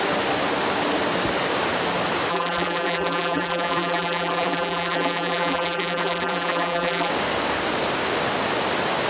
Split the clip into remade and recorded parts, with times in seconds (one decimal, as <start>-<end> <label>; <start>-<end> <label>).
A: 0.0-2.3 recorded; 2.3-7.1 remade; 7.1-9.1 recorded